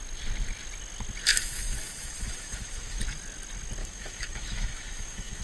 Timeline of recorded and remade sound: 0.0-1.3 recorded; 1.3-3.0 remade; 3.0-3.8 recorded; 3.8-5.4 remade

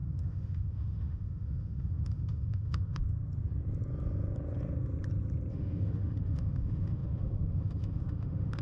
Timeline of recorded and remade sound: 0.0-3.0 remade; 3.0-5.5 recorded; 5.5-8.6 remade

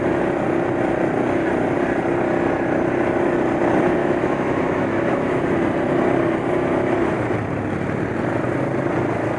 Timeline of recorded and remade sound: 0.0-4.0 recorded; 4.0-5.4 remade; 5.4-9.4 recorded

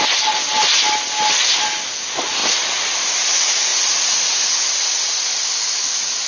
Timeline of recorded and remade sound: 0.0-5.4 recorded; 5.4-6.3 remade

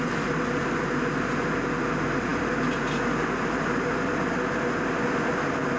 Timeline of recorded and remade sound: 0.0-5.8 recorded

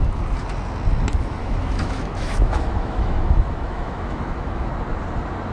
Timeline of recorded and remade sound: 0.0-1.4 recorded; 1.4-4.7 remade; 4.7-5.5 recorded

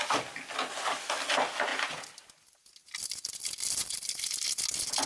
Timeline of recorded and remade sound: 0.0-5.1 recorded